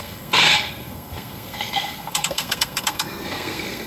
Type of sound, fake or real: fake